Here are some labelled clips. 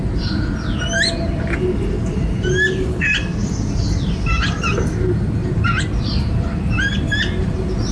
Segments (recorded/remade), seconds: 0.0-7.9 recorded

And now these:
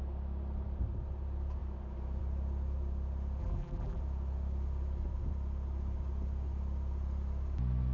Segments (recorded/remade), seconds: 0.0-3.4 recorded; 3.4-4.0 remade; 4.0-7.9 recorded

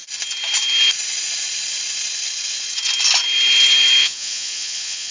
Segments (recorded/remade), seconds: 0.0-4.0 recorded; 4.0-5.1 remade

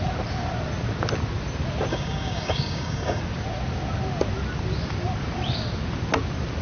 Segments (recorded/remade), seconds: 0.0-1.9 recorded; 1.9-3.2 remade; 3.2-6.6 recorded